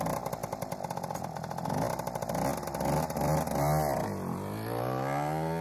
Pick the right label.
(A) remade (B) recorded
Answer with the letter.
B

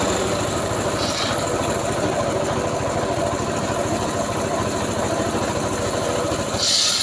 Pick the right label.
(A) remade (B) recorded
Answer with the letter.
A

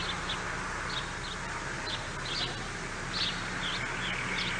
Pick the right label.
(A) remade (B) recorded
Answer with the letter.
B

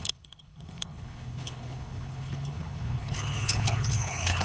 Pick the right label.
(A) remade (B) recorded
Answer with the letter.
A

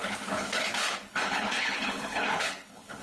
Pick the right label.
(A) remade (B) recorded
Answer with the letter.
A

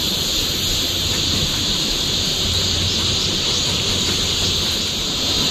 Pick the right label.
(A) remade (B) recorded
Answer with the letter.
A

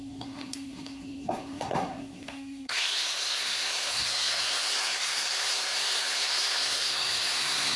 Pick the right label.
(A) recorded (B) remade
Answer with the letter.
B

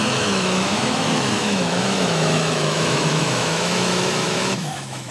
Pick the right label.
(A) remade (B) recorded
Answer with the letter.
A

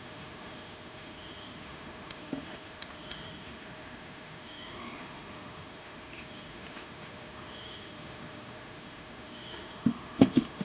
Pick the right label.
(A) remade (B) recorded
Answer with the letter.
A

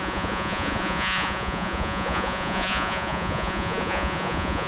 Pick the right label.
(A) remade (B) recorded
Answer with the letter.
A